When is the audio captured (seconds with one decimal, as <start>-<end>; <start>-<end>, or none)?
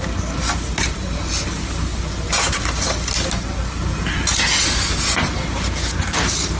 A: 0.0-6.6